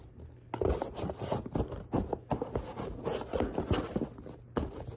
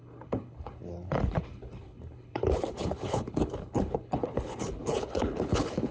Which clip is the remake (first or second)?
second